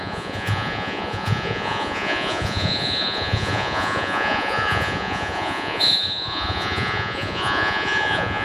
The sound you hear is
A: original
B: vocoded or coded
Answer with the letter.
B